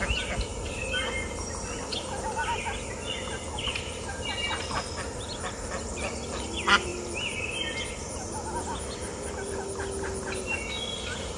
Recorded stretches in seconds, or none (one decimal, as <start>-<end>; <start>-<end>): 0.0-11.4